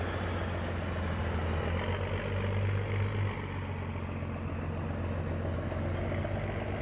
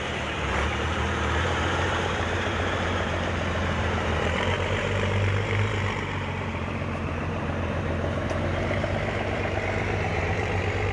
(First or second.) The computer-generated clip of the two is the second